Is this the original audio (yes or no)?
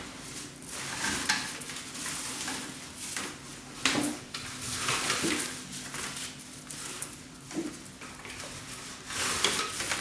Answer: yes